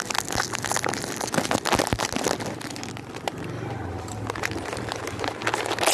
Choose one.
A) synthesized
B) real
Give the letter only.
B